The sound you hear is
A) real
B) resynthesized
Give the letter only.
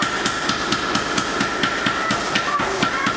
A